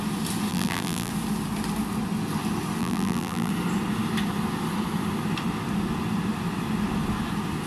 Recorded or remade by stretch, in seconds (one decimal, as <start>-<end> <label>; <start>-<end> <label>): 0.0-0.5 recorded; 0.5-1.1 remade; 1.1-2.8 recorded; 2.8-3.5 remade; 3.5-7.7 recorded